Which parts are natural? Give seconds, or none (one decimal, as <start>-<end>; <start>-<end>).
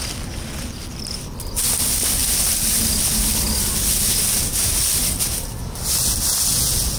0.0-6.5